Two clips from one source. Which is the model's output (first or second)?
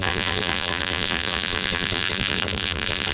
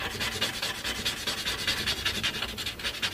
first